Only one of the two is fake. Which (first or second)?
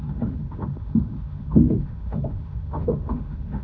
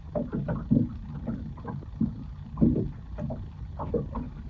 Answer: first